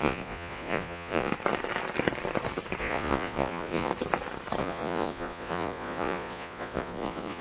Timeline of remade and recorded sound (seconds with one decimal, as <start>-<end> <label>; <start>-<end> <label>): 0.0-1.3 remade; 1.3-2.8 recorded; 2.8-3.9 remade; 3.9-4.6 recorded; 4.6-7.4 remade